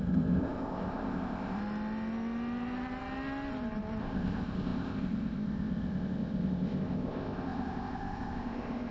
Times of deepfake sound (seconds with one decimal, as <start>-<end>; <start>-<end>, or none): 0.0-1.6; 4.0-8.9